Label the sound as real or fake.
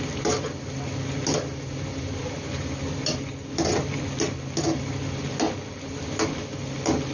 real